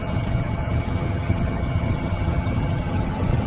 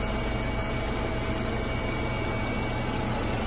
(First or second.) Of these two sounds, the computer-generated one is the first